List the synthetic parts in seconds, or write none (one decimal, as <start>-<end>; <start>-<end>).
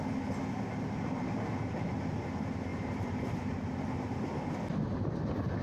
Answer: 2.7-4.5